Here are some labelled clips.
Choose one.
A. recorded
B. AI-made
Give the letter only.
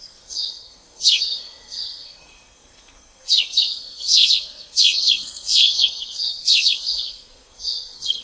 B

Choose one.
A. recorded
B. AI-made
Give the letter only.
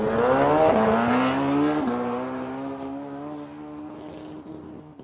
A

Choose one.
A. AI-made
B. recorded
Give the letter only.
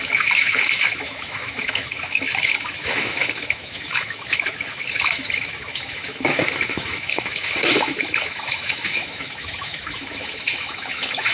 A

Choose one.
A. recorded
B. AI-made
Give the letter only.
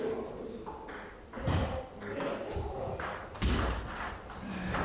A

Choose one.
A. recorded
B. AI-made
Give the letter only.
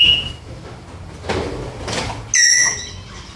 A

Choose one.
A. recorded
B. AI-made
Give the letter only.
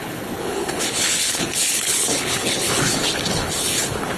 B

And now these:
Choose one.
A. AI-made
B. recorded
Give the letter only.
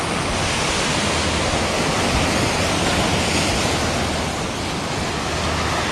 B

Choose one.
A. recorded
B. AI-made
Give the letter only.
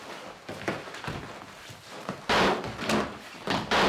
A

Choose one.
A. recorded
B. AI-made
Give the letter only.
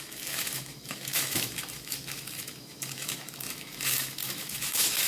B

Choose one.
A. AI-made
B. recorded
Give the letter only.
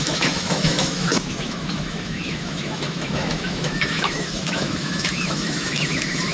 A